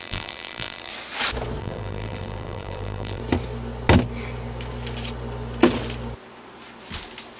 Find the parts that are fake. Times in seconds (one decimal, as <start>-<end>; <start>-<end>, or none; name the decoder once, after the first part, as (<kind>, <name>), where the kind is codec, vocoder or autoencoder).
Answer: 0.0-0.9 (vocoder, BigVGAN v2); 1.6-3.2